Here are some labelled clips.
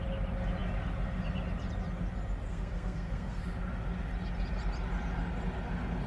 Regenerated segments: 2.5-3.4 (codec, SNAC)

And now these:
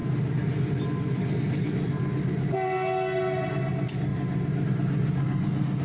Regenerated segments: 5.2-5.8 (codec, SNAC)

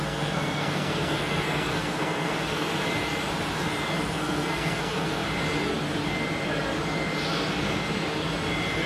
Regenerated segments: 0.0-2.7 (codec, SNAC); 4.1-5.2